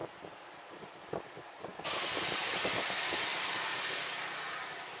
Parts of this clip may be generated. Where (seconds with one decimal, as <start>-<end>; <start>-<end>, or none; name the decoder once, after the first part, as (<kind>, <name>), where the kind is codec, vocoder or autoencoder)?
0.0-1.2 (vocoder, BigVGAN v2); 1.7-2.3; 3.3-4.0